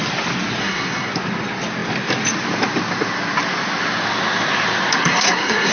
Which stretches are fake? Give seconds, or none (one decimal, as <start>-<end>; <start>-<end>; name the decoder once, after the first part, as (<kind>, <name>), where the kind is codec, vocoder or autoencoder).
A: 0.6-1.1 (codec, SNAC); 4.9-5.7